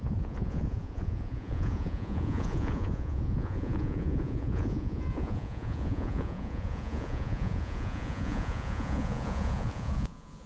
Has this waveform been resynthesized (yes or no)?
yes